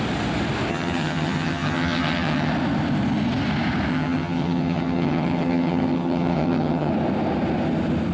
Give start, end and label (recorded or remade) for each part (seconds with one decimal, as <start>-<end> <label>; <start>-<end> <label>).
0.0-0.7 recorded; 0.7-2.5 remade; 2.5-3.9 recorded; 3.9-6.9 remade; 6.9-8.1 recorded